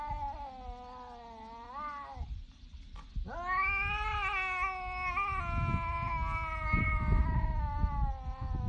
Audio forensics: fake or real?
real